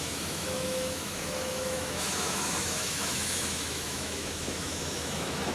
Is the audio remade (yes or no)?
yes